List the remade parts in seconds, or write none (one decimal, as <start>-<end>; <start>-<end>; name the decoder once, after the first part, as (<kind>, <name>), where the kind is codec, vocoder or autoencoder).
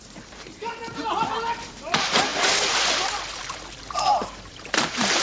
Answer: 0.0-5.2 (vocoder, BigVGAN v2)